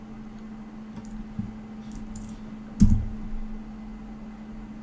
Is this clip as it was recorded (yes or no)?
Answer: yes